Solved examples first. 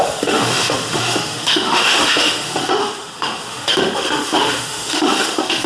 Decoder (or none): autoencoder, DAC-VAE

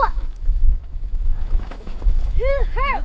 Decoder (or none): autoencoder, DAC-VAE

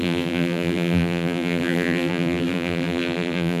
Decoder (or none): vocoder, BigVGAN v2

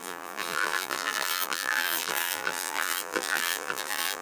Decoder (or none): vocoder, BigVGAN v2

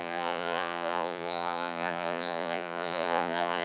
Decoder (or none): vocoder, Vocos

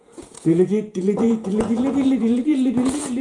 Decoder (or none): vocoder, Vocos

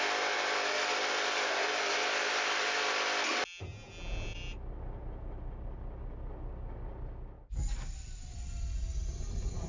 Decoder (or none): none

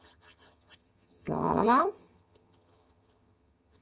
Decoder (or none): vocoder, HiFi-GAN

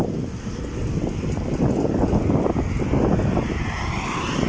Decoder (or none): none